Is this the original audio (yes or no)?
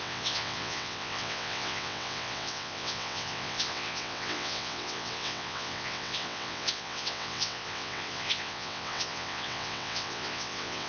no